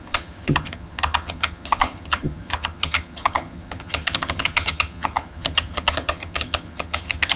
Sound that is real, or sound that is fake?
fake